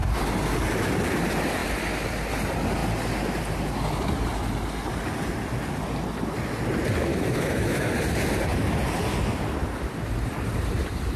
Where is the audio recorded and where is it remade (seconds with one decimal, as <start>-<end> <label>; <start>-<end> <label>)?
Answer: 0.0-7.1 recorded; 7.1-7.9 remade; 7.9-11.2 recorded